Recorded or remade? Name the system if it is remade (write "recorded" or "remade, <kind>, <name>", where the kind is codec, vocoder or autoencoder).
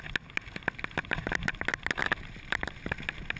recorded